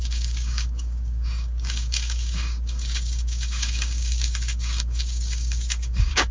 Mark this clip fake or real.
fake